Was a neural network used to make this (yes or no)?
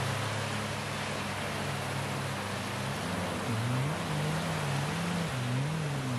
no